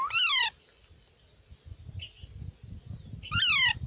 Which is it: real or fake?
real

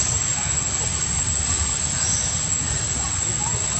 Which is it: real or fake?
real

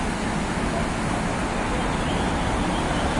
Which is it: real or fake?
real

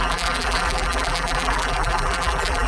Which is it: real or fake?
fake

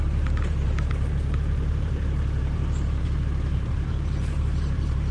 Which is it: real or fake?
fake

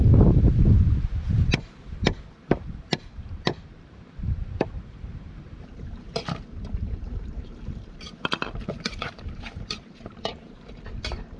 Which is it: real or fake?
fake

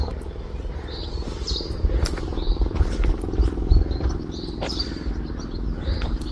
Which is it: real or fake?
fake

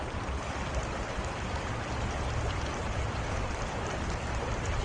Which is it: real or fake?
fake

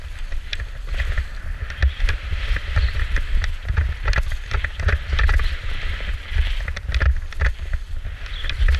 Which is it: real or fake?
real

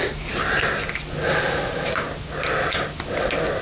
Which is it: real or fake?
real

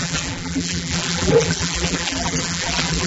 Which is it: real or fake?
fake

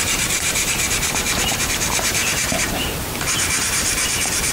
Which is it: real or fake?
fake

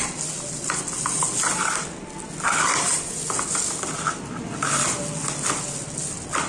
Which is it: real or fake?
real